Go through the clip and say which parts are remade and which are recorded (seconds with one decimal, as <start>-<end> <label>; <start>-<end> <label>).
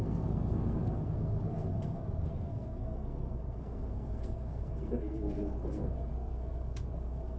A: 0.0-7.4 remade